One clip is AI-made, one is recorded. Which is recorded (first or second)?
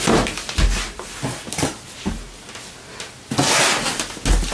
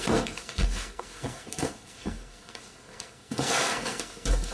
first